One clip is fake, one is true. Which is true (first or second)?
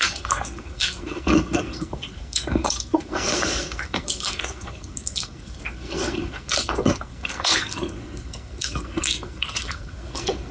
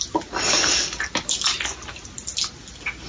second